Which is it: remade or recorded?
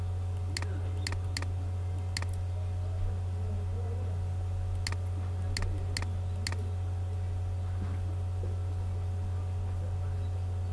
recorded